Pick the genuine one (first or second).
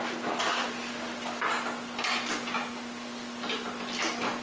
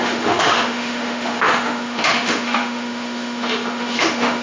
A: first